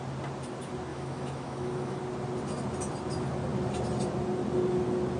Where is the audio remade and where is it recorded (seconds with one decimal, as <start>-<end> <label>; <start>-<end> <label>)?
0.0-0.9 recorded; 0.9-2.0 remade; 2.0-5.2 recorded

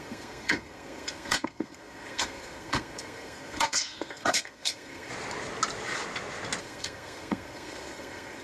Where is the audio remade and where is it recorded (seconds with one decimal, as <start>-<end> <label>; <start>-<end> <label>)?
0.0-5.1 remade; 5.1-6.6 recorded; 6.6-8.4 remade

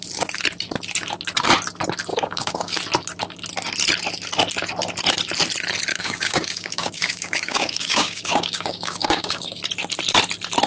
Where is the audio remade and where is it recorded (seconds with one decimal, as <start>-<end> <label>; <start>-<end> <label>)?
0.0-2.1 recorded; 2.1-2.8 remade; 2.8-5.9 recorded; 5.9-9.6 remade; 9.6-10.7 recorded